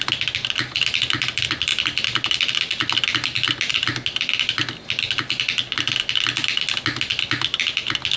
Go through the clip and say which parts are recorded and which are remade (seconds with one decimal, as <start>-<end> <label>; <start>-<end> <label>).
0.0-8.2 recorded